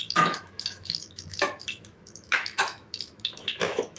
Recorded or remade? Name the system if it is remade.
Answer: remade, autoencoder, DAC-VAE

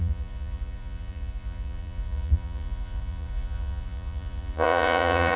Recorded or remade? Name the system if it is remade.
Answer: remade, vocoder, Vocos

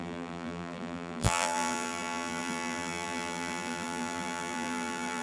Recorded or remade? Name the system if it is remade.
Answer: remade, vocoder, BigVGAN v2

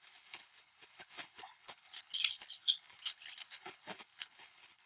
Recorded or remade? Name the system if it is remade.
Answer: remade, codec, HILCodec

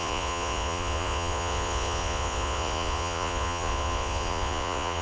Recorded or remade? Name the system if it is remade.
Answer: remade, vocoder, Vocos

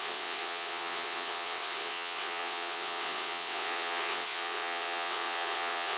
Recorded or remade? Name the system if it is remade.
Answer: remade, vocoder, WaveNeXt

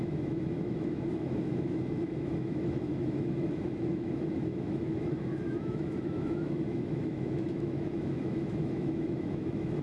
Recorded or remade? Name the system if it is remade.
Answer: remade, autoencoder, DAC-VAE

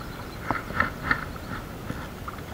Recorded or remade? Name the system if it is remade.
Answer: recorded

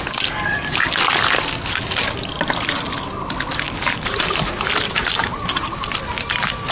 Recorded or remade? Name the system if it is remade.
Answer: recorded